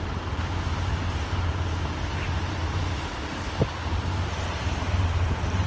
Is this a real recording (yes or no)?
no